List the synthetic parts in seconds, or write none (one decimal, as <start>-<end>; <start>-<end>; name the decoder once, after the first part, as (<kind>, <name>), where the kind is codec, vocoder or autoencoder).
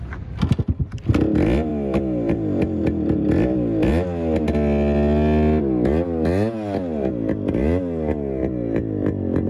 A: none